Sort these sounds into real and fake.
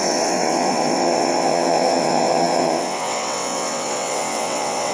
fake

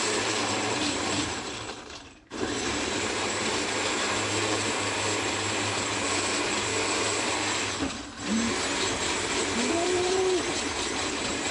fake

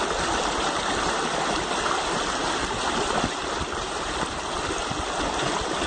real